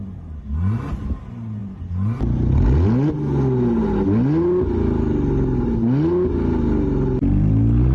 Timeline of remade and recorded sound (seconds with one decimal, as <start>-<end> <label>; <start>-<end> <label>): 0.0-7.9 recorded